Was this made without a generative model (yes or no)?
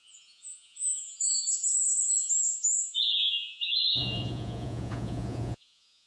no